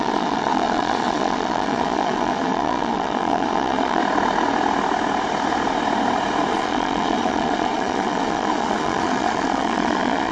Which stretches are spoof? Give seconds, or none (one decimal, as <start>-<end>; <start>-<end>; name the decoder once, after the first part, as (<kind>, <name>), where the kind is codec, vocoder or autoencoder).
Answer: 0.0-4.0 (vocoder, Vocos); 6.5-10.3